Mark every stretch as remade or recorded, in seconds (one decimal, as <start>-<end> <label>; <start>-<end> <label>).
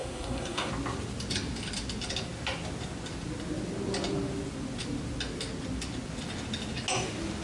0.0-0.7 remade; 0.7-7.4 recorded